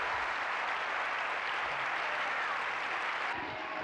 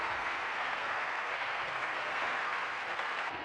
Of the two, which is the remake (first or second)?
second